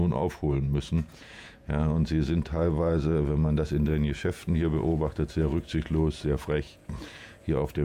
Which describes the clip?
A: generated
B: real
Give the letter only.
A